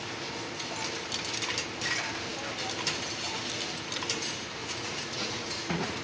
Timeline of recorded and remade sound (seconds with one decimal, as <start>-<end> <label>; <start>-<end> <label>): 0.0-4.6 recorded; 4.6-6.0 remade

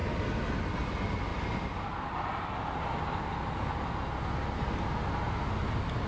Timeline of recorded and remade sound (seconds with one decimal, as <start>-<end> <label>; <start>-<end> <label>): 0.0-6.1 recorded